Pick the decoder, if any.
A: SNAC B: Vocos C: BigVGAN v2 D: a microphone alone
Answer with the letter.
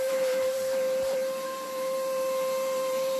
C